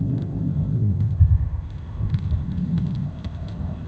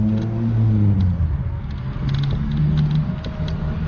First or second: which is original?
second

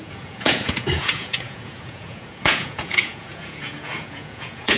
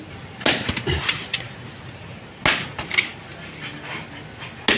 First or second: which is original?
second